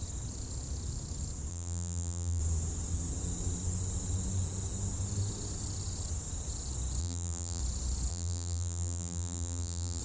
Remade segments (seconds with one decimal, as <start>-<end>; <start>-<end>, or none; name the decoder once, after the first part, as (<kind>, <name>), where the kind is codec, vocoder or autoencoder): 1.5-2.4 (vocoder, BigVGAN v2); 7.0-7.6; 8.1-10.0